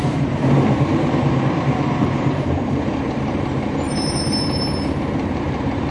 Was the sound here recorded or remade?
remade